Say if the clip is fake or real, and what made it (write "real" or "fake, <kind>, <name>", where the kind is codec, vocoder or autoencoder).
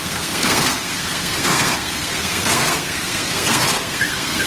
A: fake, codec, SNAC